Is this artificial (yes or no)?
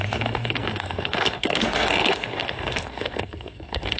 yes